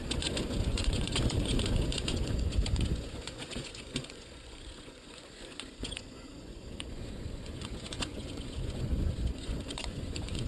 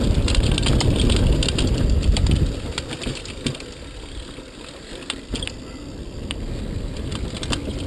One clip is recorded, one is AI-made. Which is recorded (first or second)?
second